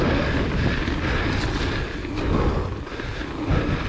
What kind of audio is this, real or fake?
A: real